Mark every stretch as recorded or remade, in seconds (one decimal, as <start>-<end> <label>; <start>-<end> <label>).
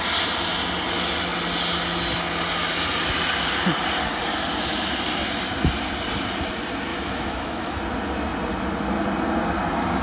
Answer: 0.0-6.9 recorded; 6.9-7.8 remade; 7.8-10.0 recorded